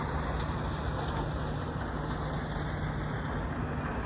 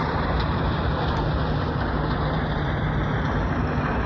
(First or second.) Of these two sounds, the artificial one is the second